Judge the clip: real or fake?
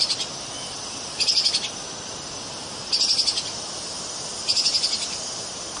real